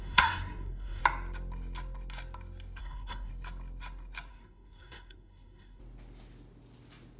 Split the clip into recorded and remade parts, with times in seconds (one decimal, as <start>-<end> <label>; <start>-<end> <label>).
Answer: 0.0-1.0 remade; 1.0-2.8 recorded; 2.8-3.3 remade; 3.3-4.3 recorded; 4.3-5.8 remade; 5.8-7.2 recorded